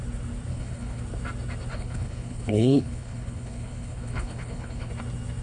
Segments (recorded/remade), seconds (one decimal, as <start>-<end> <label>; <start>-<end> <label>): 0.0-0.5 recorded; 0.5-1.0 remade; 1.0-1.7 recorded; 1.7-4.9 remade; 4.9-5.4 recorded